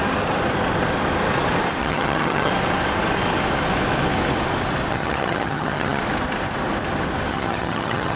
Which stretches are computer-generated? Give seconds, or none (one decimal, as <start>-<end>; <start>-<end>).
1.8-2.5; 4.9-6.0; 7.3-8.2